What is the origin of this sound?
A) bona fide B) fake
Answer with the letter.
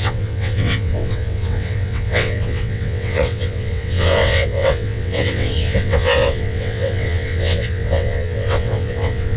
B